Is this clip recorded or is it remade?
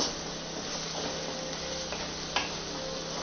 recorded